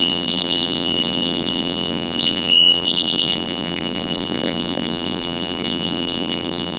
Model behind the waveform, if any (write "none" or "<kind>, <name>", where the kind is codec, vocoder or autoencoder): vocoder, BigVGAN v2